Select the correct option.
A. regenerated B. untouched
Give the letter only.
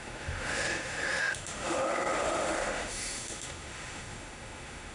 A